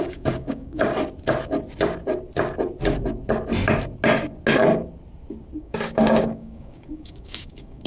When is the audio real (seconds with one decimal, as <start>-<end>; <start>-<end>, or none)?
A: 0.9-5.6